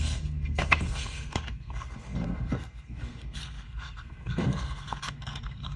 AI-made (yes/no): yes